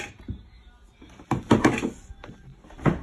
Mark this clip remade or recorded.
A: recorded